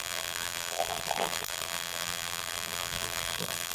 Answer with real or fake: fake